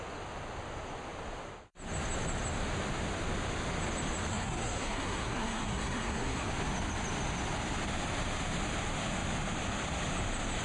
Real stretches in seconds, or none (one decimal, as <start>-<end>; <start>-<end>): 0.0-4.3; 6.5-10.6